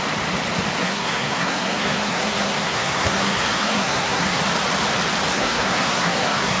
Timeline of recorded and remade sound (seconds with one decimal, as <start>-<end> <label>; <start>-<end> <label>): 0.0-0.8 recorded; 0.8-4.4 remade; 4.4-5.3 recorded; 5.3-6.6 remade